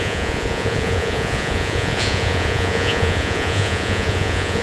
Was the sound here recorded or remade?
remade